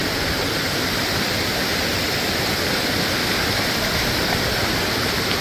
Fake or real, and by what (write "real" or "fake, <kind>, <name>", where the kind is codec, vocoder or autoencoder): real